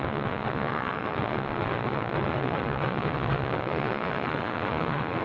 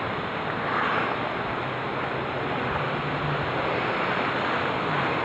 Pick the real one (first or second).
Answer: second